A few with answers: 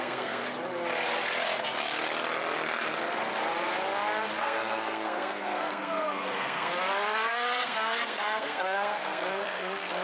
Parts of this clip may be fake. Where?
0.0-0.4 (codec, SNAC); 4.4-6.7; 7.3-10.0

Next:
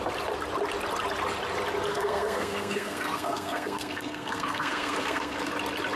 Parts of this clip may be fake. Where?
1.9-5.5 (codec, SNAC)